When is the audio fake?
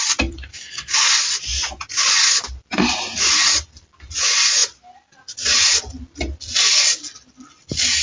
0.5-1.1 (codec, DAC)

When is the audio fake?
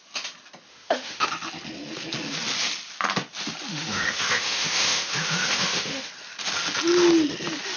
0.7-1.3 (autoencoder, DAC-VAE); 3.7-6.1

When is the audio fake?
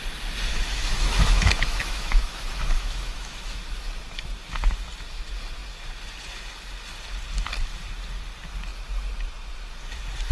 0.5-3.6 (autoencoder, DAC-VAE)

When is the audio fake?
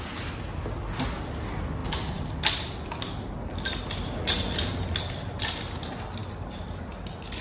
none